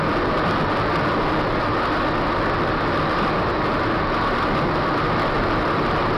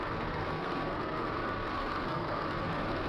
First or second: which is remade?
second